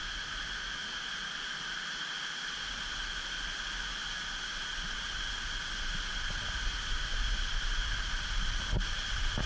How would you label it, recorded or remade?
recorded